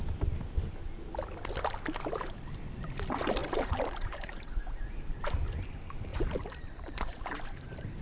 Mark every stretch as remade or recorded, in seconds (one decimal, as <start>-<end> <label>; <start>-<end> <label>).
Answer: 0.0-3.4 recorded; 3.4-5.4 remade; 5.4-6.1 recorded; 6.1-8.0 remade